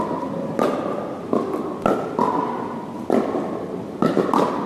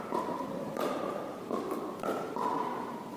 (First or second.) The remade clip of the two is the second